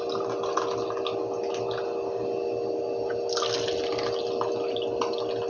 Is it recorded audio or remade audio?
recorded